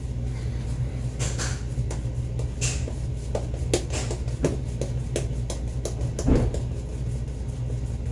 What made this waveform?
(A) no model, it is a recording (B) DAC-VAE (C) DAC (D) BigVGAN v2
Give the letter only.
A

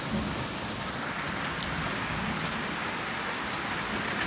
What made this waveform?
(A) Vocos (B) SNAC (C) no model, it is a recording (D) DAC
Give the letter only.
C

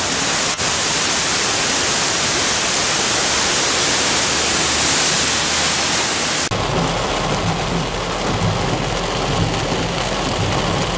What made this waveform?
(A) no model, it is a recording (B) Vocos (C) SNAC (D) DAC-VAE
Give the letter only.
A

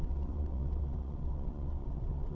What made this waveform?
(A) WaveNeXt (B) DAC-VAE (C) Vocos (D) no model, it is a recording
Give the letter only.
A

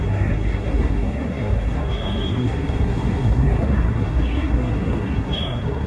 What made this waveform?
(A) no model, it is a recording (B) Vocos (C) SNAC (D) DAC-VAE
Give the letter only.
C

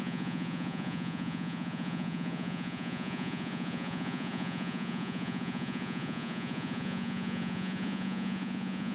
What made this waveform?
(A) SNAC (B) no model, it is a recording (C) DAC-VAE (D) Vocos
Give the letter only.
D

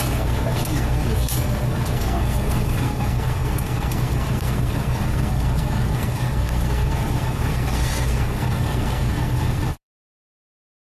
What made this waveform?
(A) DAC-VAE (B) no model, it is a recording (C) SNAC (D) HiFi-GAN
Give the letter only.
C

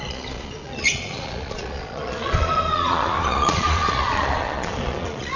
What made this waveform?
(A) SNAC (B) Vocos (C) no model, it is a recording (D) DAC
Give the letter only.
B